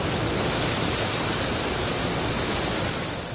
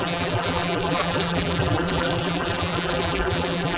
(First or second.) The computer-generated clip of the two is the second